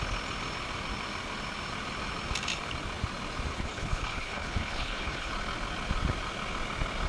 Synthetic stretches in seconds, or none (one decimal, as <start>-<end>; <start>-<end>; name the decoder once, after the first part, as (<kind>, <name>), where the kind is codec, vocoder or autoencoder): 3.5-5.3 (codec, HILCodec)